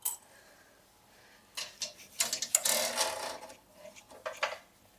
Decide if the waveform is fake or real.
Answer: real